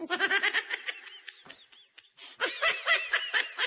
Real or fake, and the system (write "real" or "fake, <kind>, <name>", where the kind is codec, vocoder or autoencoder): real